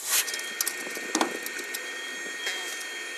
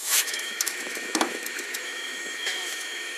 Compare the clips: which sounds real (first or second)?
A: first